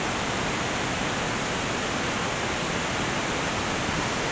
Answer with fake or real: real